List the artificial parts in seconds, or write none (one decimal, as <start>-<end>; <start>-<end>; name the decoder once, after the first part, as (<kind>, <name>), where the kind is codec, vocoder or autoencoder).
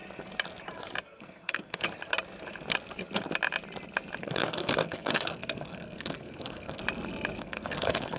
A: 1.0-1.8 (codec, SNAC); 4.2-6.8; 7.4-8.2